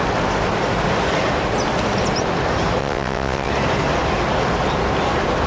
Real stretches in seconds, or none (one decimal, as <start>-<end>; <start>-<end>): 0.0-2.8; 3.5-5.5

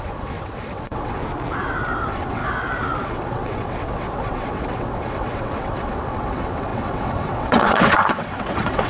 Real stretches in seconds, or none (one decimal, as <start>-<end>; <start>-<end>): 1.2-2.0; 2.4-3.0

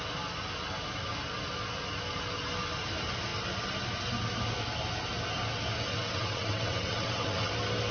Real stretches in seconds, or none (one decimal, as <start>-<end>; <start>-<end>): 0.0-5.9; 7.5-7.9

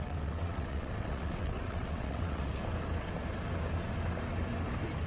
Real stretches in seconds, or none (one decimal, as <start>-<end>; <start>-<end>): 2.6-5.1

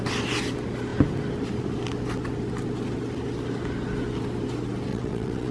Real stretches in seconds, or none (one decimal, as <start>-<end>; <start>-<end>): 0.0-4.9

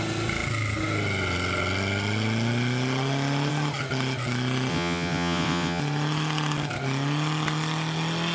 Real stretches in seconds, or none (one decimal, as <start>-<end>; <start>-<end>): 0.0-4.7; 5.8-8.3

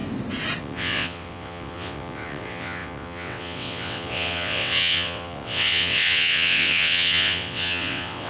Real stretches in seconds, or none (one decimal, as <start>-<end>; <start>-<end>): 0.0-0.6